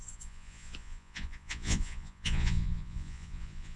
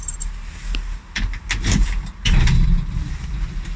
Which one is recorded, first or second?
second